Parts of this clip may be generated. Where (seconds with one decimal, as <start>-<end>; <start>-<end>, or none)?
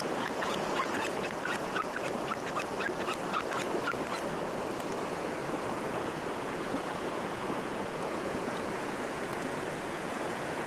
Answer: 0.0-1.9; 5.0-10.7